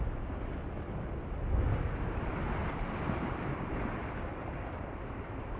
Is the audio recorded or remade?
recorded